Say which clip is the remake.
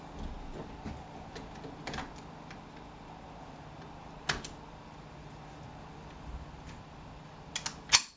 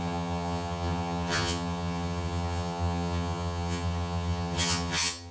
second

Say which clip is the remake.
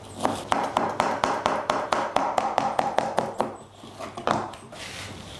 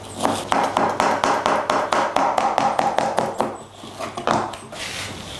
first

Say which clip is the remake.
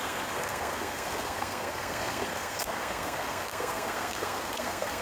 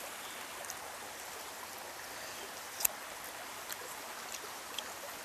first